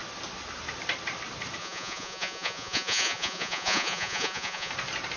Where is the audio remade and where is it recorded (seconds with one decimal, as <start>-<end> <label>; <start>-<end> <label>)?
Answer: 0.0-1.6 recorded; 1.6-4.7 remade; 4.7-5.2 recorded